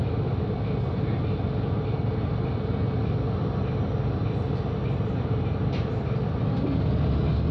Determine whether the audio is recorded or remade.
recorded